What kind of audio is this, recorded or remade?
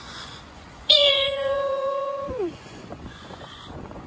remade